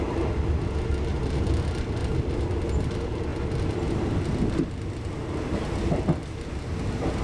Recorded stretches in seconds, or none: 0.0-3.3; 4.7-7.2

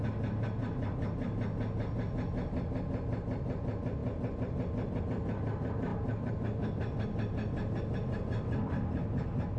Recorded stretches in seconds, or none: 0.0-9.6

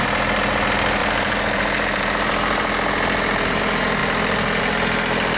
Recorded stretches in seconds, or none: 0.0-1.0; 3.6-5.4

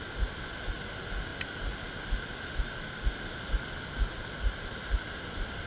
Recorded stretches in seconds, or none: 0.0-5.7